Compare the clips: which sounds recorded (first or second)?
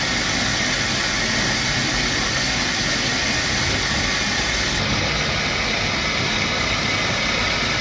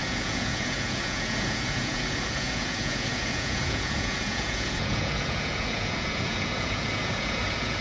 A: first